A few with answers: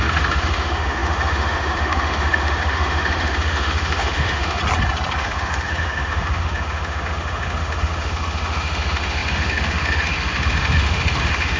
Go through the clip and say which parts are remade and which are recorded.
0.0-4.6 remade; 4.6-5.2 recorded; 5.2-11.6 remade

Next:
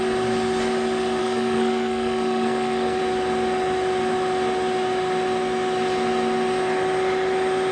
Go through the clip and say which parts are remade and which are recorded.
0.0-1.2 recorded; 1.2-3.0 remade; 3.0-7.7 recorded

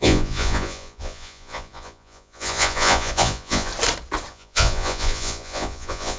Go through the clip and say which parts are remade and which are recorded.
0.0-3.7 remade; 3.7-4.3 recorded; 4.3-6.2 remade

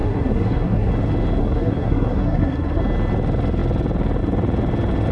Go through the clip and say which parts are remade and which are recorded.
0.0-0.9 remade; 0.9-1.4 recorded; 1.4-2.8 remade; 2.8-5.1 recorded

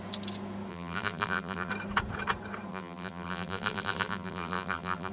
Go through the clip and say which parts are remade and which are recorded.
0.0-0.7 recorded; 0.7-1.7 remade; 1.7-2.7 recorded; 2.7-5.1 remade